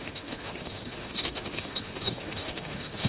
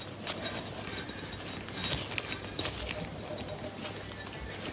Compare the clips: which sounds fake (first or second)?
first